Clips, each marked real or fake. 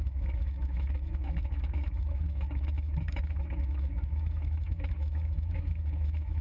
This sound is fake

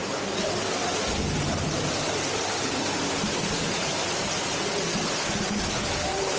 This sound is fake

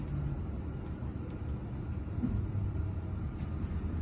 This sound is real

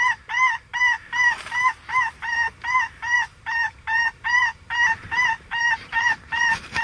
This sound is fake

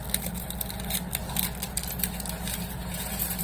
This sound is real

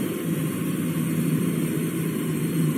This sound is fake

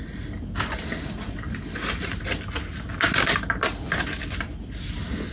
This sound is real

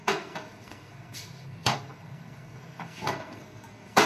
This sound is fake